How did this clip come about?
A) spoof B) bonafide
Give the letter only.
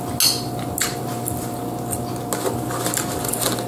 B